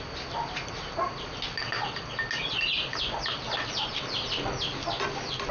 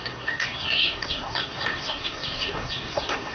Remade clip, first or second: second